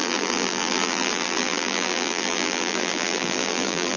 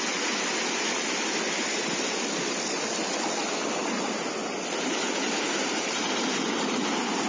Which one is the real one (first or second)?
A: second